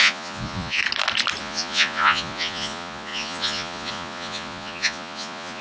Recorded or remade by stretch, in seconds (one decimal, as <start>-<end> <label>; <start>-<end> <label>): 0.0-0.8 remade; 0.8-1.4 recorded; 1.4-5.6 remade